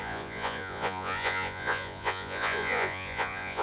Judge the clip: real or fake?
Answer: fake